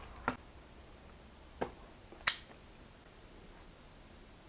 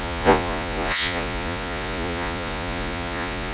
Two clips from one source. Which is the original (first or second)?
first